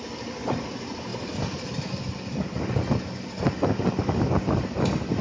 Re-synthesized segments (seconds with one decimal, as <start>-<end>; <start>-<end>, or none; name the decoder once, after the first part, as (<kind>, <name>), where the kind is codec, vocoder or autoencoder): none